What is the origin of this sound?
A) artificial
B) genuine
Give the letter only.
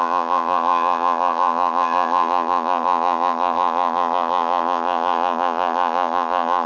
A